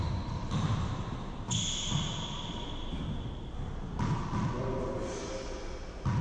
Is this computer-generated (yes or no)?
no